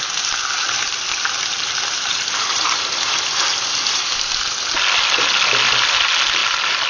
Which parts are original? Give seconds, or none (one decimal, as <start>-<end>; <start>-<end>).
0.0-2.1; 3.3-3.7; 4.5-6.9